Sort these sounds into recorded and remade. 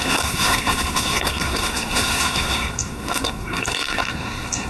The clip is remade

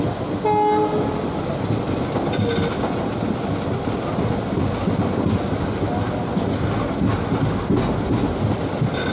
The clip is recorded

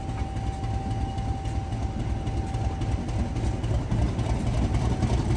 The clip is recorded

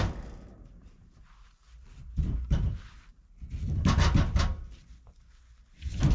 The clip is recorded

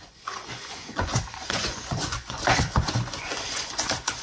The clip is remade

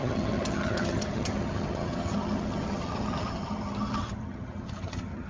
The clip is remade